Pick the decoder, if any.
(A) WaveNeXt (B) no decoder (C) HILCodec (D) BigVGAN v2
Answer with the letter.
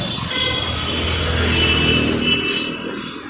B